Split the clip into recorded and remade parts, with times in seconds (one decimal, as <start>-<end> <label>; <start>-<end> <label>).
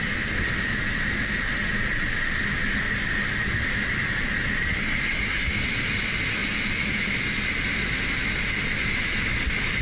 0.0-9.8 recorded